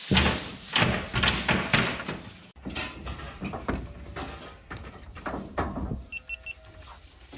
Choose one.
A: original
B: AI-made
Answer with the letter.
A